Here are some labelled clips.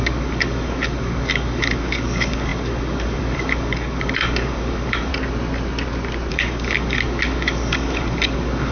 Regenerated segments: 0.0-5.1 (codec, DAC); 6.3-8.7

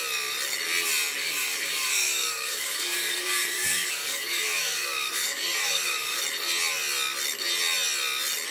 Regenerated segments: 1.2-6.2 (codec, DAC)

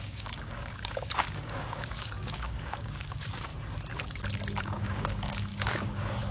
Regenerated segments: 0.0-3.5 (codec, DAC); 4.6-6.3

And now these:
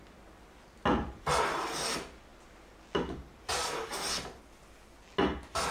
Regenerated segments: none

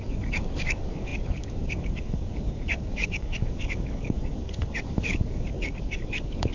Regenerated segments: 0.0-6.5 (codec, DAC)

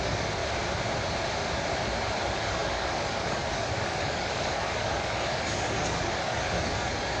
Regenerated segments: 0.0-0.4 (codec, DAC); 2.2-7.2

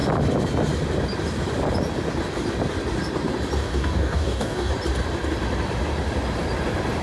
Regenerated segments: 3.6-4.7 (codec, DAC)